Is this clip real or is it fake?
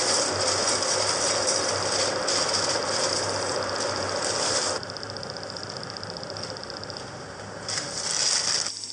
real